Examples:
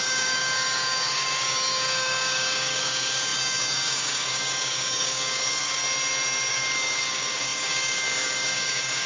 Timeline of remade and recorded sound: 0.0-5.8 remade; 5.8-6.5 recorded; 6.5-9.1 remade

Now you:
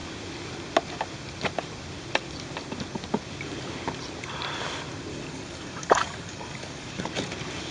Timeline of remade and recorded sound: 0.0-5.1 recorded; 5.1-7.0 remade; 7.0-7.7 recorded